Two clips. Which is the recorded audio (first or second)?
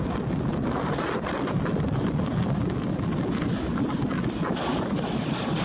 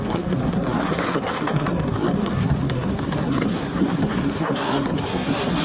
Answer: first